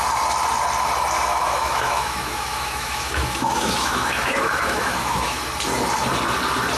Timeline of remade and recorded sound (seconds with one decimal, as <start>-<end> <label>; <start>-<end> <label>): 0.0-1.3 recorded; 1.3-5.4 remade; 5.4-6.8 recorded